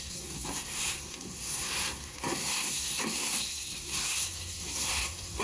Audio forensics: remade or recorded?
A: remade